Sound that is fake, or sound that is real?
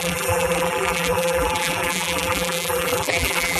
fake